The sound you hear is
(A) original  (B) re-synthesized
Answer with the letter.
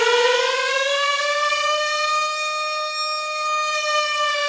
B